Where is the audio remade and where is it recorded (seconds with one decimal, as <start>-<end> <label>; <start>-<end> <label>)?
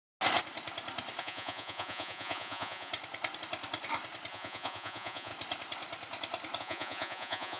0.0-1.2 recorded; 1.2-2.9 remade; 2.9-4.3 recorded; 4.3-5.3 remade; 5.3-6.6 recorded; 6.6-7.6 remade